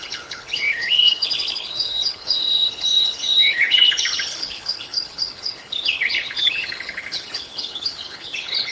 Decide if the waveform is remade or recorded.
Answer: remade